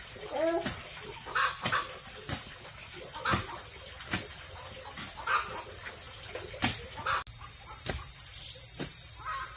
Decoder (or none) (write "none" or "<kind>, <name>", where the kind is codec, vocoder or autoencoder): none